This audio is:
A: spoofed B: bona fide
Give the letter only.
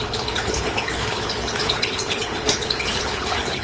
A